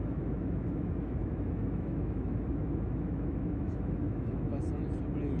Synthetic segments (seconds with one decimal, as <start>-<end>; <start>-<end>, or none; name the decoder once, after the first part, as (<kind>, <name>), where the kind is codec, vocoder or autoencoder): 0.0-4.5 (autoencoder, DAC-VAE)